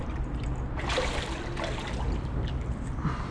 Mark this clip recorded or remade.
recorded